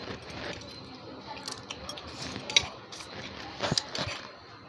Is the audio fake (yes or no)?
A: no